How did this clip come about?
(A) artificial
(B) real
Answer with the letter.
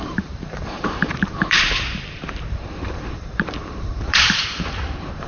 A